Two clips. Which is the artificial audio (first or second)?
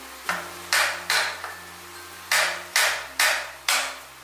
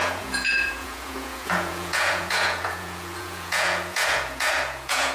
second